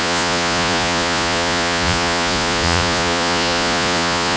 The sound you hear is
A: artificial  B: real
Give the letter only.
A